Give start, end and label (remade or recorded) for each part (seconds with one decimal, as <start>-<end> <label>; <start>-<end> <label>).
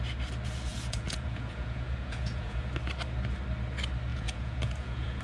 0.0-0.7 recorded; 0.7-2.7 remade; 2.7-4.1 recorded; 4.1-5.2 remade